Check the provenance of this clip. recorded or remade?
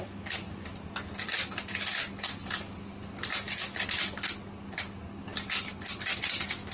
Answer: recorded